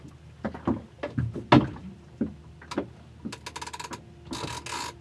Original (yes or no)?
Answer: yes